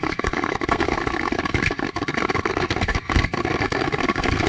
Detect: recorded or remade remade